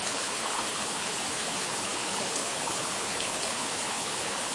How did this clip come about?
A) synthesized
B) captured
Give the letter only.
A